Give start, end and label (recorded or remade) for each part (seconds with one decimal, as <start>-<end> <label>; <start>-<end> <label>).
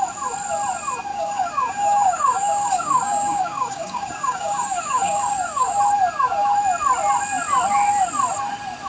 0.0-1.1 recorded; 1.1-5.8 remade; 5.8-8.9 recorded